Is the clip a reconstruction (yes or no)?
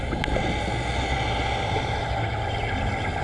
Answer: no